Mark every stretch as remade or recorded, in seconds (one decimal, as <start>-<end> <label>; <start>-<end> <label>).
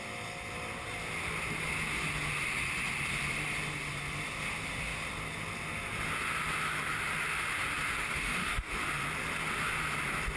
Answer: 0.0-8.0 recorded; 8.0-8.7 remade; 8.7-10.4 recorded